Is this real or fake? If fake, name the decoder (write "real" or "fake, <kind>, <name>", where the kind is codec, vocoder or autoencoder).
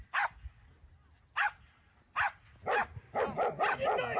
real